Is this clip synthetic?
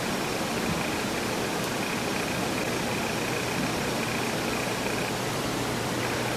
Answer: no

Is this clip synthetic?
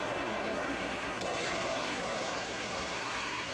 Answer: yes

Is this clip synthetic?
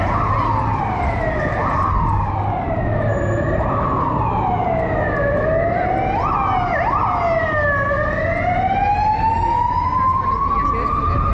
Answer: no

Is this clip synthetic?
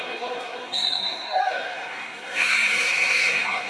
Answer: yes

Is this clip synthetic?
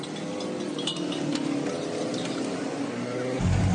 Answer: no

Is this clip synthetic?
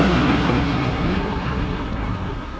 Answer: yes